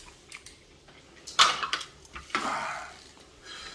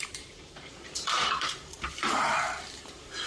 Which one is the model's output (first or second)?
second